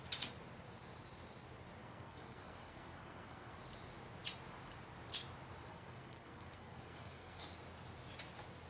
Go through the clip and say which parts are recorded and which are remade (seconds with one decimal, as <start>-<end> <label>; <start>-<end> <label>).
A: 0.0-1.8 recorded; 1.8-3.6 remade; 3.6-5.7 recorded; 5.7-7.4 remade; 7.4-8.7 recorded

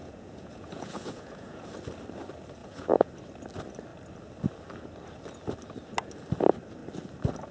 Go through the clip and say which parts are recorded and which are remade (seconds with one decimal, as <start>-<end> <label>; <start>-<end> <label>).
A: 0.0-1.7 remade; 1.7-2.6 recorded; 2.6-3.1 remade; 3.1-7.5 recorded